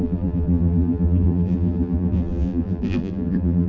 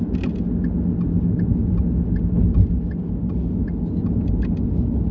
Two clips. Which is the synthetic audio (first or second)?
first